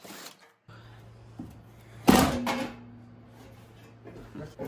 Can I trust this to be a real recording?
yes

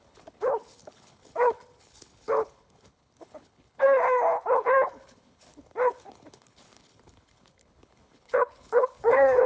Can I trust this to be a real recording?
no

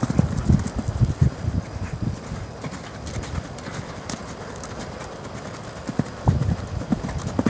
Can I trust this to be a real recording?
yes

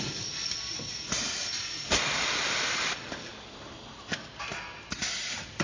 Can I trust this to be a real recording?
yes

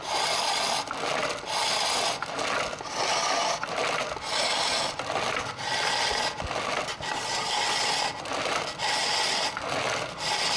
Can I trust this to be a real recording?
yes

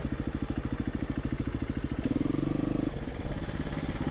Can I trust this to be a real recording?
yes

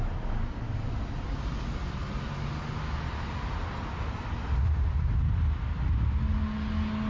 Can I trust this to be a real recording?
yes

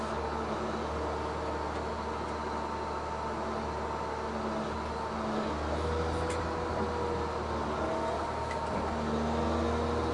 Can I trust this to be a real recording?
yes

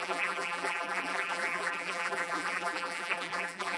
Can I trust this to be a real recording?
no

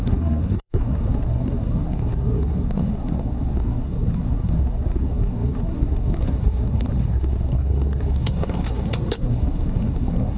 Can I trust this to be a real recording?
no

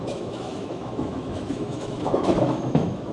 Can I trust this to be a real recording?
no